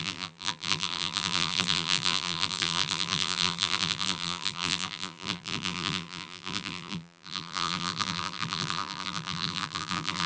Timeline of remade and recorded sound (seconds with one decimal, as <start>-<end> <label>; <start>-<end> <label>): 0.0-10.3 remade